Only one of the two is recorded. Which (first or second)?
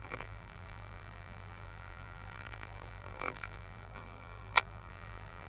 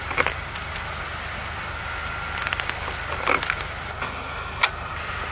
second